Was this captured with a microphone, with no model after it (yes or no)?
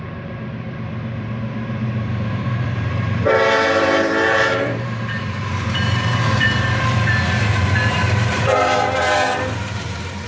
no